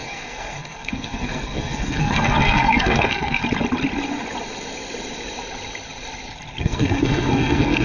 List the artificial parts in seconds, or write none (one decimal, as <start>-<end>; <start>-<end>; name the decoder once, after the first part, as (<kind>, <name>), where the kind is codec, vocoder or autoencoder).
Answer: 0.0-3.4 (codec, SNAC); 6.6-7.8